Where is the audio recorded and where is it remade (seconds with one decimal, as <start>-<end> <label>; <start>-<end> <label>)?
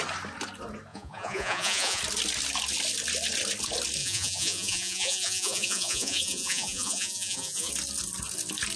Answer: 0.0-0.9 recorded; 0.9-2.0 remade; 2.0-4.0 recorded; 4.0-7.7 remade; 7.7-8.8 recorded